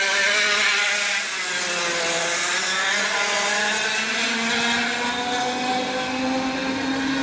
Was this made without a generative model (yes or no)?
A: yes